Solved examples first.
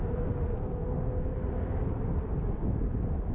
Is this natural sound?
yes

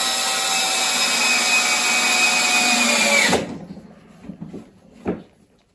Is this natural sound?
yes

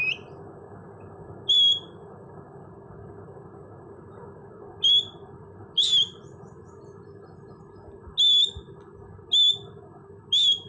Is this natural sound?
yes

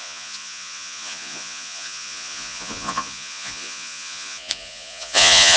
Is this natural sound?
no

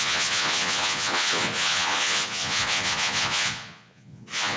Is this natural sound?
no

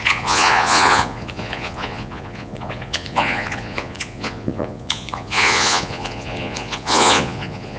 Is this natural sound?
no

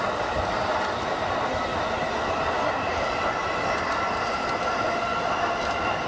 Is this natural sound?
yes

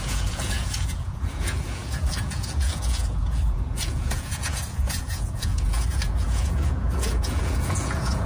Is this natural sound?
no